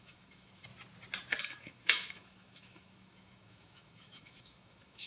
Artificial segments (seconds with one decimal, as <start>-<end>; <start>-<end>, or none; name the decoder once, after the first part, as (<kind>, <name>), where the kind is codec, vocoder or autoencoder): 0.0-0.7 (autoencoder, DAC-VAE); 1.4-5.1